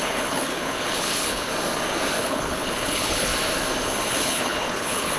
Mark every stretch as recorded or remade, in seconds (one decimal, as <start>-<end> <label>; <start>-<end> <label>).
0.0-1.5 remade; 1.5-2.2 recorded; 2.2-3.3 remade; 3.3-4.1 recorded; 4.1-5.2 remade